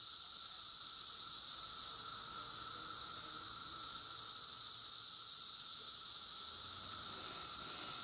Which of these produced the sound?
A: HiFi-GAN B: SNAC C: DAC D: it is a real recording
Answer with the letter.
D